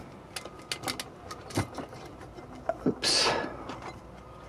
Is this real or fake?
real